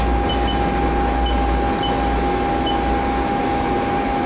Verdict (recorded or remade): recorded